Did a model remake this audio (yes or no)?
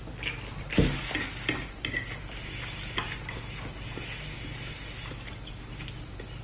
no